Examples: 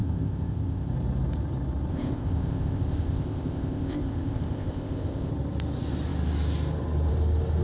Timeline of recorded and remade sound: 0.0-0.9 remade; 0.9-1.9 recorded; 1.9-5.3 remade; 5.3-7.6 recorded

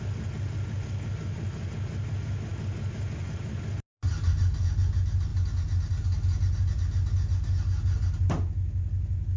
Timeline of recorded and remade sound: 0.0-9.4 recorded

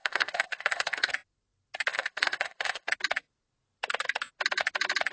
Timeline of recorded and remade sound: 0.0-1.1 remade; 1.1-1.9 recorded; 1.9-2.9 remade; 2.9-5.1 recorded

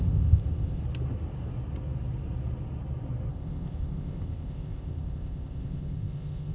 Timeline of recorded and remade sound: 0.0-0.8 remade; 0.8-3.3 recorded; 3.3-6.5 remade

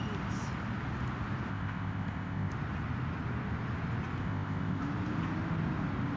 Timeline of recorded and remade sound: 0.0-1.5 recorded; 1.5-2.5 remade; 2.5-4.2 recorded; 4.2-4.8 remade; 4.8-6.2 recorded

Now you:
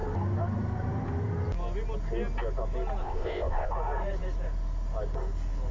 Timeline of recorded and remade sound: 0.0-3.0 recorded; 3.0-3.7 remade; 3.7-5.7 recorded